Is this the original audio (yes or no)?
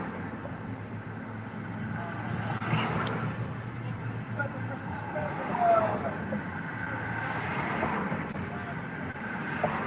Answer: yes